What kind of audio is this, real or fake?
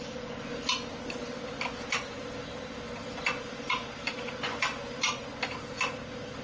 real